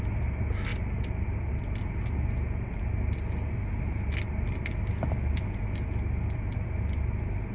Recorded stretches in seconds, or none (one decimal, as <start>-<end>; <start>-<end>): 0.0-7.5

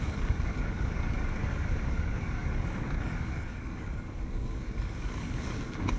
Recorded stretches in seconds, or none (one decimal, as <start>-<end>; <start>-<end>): none